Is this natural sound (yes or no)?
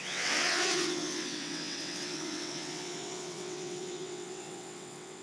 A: no